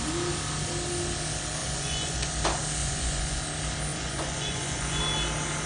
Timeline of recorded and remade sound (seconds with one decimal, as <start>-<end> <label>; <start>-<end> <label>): 0.0-1.6 recorded; 1.6-2.3 remade; 2.3-2.8 recorded; 2.8-3.4 remade; 3.4-3.9 recorded; 3.9-5.0 remade; 5.0-5.7 recorded